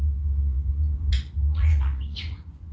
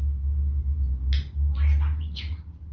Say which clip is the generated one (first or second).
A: first